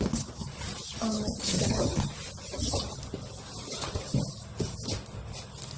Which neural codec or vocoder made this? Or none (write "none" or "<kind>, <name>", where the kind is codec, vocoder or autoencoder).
none